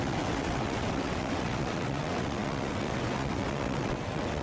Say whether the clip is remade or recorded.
remade